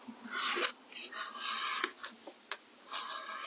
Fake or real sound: real